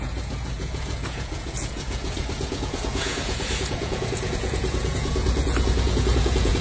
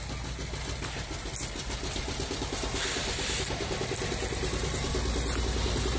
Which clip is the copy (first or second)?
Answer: first